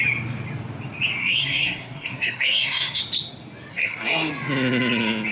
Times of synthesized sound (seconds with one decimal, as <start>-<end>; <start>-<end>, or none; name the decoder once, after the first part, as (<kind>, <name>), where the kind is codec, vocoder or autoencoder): 1.2-3.0 (codec, SNAC); 3.7-4.3